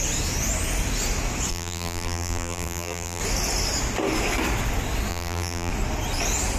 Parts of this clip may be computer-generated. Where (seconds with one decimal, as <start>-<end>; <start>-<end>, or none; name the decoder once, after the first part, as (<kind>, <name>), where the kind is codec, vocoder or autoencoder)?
1.5-3.2 (vocoder, BigVGAN v2); 5.1-5.7